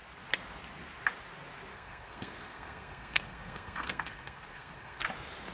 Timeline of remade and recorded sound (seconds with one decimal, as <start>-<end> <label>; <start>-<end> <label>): 0.0-1.7 recorded; 1.7-5.0 remade; 5.0-5.5 recorded